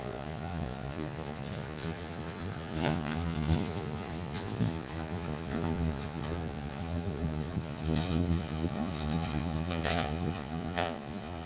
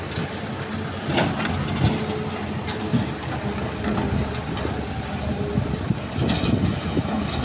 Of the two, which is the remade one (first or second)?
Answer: first